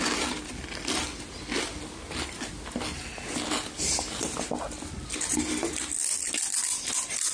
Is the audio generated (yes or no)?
no